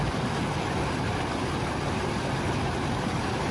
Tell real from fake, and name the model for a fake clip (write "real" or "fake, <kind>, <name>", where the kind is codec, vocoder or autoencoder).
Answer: real